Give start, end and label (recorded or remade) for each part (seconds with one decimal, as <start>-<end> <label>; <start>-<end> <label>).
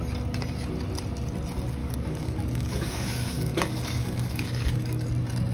0.0-1.8 recorded; 1.8-5.1 remade; 5.1-5.5 recorded